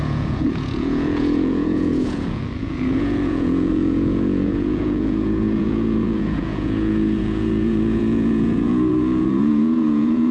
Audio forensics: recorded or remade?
remade